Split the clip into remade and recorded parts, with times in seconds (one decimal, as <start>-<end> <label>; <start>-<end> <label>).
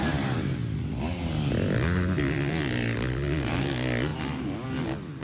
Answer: 0.0-5.2 recorded